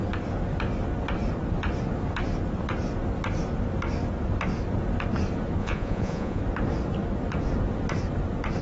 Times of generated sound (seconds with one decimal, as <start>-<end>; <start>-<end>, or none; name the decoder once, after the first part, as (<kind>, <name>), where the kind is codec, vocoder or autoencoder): 5.6-6.4 (vocoder, Vocos)